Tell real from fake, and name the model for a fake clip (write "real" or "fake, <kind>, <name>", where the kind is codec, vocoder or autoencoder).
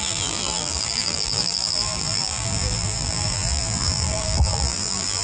fake, vocoder, BigVGAN v2